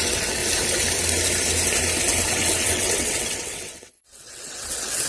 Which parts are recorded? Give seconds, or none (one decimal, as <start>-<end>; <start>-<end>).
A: 0.4-2.3